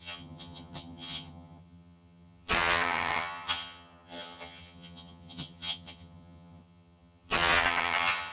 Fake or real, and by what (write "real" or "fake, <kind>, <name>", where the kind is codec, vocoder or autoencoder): fake, vocoder, HiFi-GAN